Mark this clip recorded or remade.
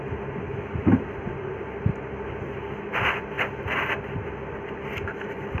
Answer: recorded